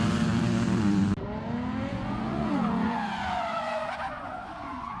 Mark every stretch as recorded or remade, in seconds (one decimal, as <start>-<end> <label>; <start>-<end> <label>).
0.0-1.9 recorded; 1.9-5.0 remade